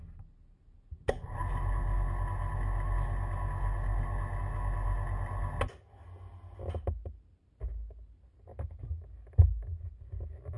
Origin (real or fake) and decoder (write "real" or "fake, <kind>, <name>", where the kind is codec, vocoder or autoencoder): real